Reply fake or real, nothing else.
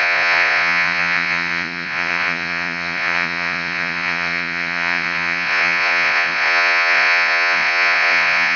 fake